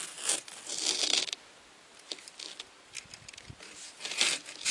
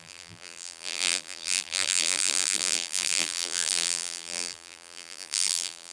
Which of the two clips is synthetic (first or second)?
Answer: second